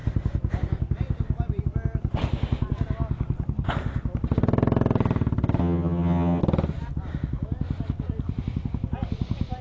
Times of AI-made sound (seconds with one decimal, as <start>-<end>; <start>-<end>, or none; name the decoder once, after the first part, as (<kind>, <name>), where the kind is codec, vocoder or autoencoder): 5.6-6.4 (vocoder, HiFi-GAN)